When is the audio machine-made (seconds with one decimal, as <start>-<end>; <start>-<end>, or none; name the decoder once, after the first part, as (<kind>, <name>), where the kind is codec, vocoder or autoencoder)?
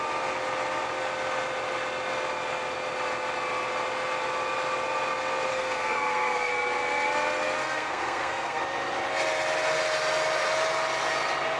5.5-6.5 (codec, SNAC); 7.6-8.6